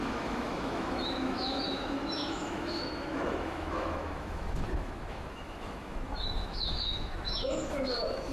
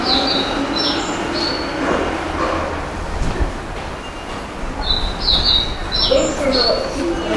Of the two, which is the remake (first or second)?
first